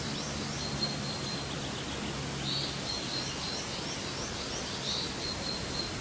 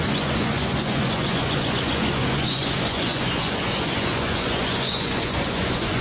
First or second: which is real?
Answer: first